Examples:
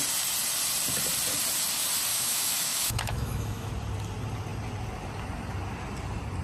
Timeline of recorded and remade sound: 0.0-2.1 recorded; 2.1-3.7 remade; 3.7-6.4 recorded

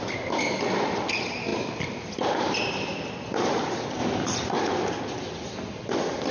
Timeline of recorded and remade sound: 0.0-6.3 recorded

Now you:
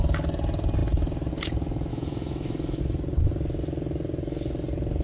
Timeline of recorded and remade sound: 0.0-1.9 recorded; 1.9-2.8 remade; 2.8-5.0 recorded

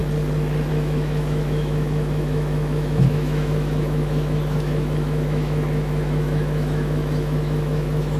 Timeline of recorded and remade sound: 0.0-0.7 recorded; 0.7-8.2 remade

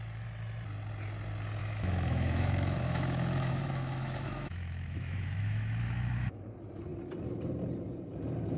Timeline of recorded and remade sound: 0.0-1.6 recorded; 1.6-6.4 remade; 6.4-8.6 recorded

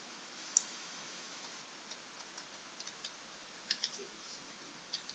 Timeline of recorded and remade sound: 0.0-1.5 remade; 1.5-3.3 recorded; 3.3-5.1 remade

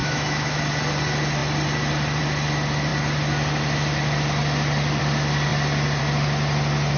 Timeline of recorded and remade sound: 0.0-0.6 remade; 0.6-7.0 recorded

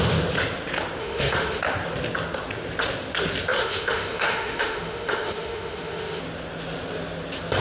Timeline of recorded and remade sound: 0.0-1.0 recorded; 1.0-1.6 remade; 1.6-3.5 recorded; 3.5-6.2 remade; 6.2-7.6 recorded